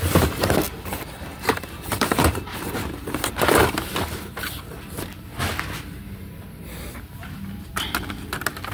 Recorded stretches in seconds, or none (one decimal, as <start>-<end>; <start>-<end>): 0.0-1.3; 3.8-8.7